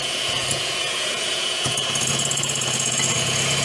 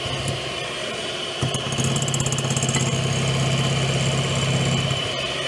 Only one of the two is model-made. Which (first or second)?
first